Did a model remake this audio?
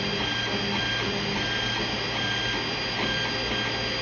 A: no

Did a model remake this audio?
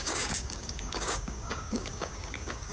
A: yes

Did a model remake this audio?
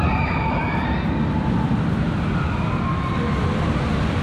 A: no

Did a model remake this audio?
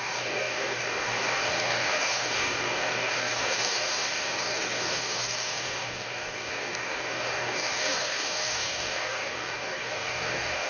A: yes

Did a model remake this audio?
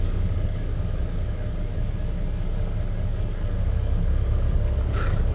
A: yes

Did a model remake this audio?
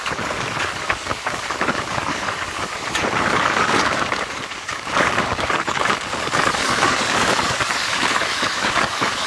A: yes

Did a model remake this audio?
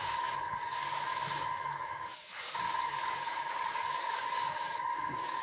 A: yes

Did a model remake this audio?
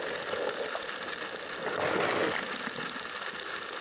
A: no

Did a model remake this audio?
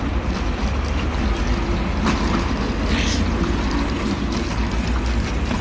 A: no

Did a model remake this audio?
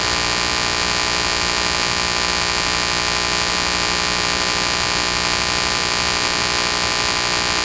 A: no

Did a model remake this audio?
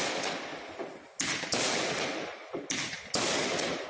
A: no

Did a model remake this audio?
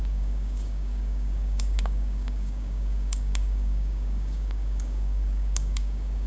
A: yes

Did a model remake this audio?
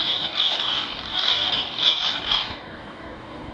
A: yes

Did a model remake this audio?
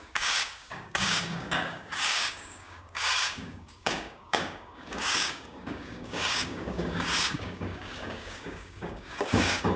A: yes